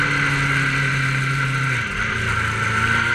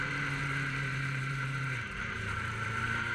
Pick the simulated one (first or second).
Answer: second